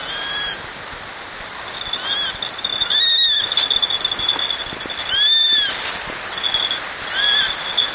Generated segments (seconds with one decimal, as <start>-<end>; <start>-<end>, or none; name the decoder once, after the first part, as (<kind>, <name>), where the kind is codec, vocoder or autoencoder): none